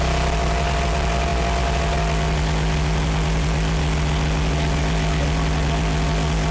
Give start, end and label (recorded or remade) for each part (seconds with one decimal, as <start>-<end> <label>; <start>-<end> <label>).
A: 0.0-6.5 recorded